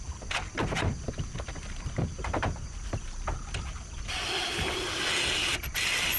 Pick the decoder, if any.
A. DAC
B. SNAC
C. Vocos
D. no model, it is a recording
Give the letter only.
D